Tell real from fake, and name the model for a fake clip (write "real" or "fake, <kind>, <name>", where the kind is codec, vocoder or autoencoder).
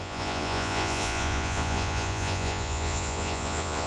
fake, vocoder, Vocos